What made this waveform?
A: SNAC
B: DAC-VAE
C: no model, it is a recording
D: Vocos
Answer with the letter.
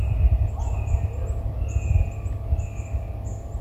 C